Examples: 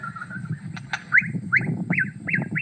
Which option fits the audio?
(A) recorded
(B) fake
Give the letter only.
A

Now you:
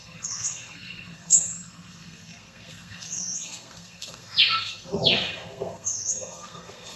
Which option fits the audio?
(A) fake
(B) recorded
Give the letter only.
A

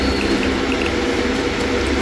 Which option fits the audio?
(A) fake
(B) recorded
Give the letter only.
B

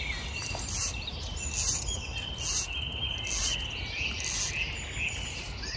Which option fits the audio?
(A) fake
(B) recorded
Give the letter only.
B